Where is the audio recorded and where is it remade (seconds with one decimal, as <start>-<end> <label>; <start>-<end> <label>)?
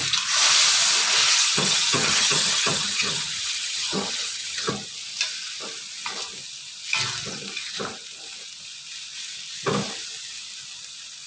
0.0-1.2 recorded; 1.2-4.7 remade; 4.7-11.3 recorded